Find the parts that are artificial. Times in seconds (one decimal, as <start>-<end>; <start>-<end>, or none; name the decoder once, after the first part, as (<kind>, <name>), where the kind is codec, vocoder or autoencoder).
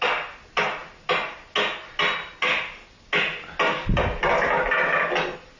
none